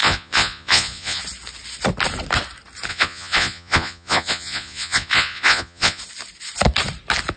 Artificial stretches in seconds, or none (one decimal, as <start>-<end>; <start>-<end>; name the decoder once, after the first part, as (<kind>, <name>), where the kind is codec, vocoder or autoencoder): 0.0-1.2 (vocoder, Vocos); 2.9-6.0